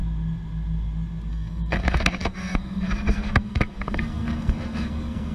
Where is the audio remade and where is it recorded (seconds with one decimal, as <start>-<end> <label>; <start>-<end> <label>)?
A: 0.0-1.3 recorded; 1.3-5.3 remade